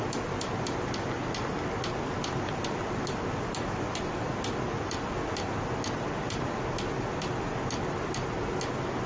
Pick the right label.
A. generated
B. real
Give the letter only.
B